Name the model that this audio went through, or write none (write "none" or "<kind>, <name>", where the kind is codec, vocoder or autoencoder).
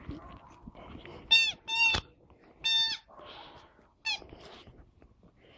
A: none